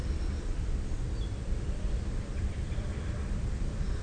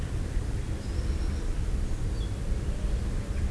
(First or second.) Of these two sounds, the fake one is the first